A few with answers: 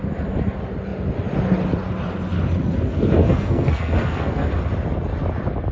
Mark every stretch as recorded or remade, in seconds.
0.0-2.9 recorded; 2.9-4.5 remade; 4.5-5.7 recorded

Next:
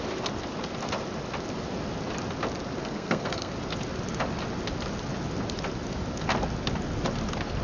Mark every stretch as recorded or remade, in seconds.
0.0-2.8 recorded; 2.8-3.5 remade; 3.5-7.6 recorded

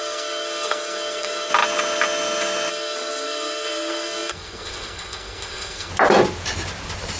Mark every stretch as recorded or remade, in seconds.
0.0-1.5 remade; 1.5-2.7 recorded; 2.7-5.9 remade; 5.9-7.2 recorded

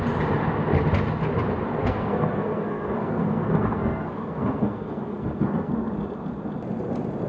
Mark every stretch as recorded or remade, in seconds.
0.0-1.8 recorded; 1.8-5.7 remade; 5.7-7.3 recorded

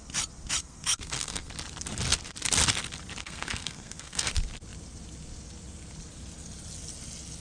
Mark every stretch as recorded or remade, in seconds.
0.0-0.6 recorded; 0.6-1.5 remade; 1.5-3.2 recorded; 3.2-4.3 remade; 4.3-7.4 recorded

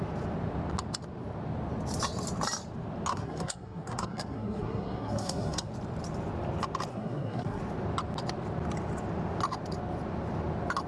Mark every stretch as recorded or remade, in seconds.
0.0-3.1 recorded; 3.1-5.7 remade; 5.7-6.9 recorded; 6.9-7.6 remade; 7.6-10.9 recorded